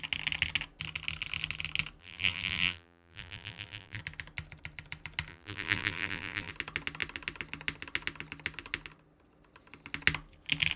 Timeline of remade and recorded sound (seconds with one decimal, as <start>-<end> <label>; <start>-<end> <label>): 0.0-2.0 recorded; 2.0-4.0 remade; 4.0-5.3 recorded; 5.3-6.5 remade; 6.5-10.8 recorded